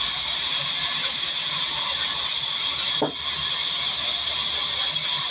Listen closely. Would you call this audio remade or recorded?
recorded